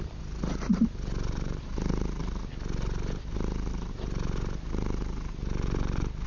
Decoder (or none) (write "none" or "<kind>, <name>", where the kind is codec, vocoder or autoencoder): none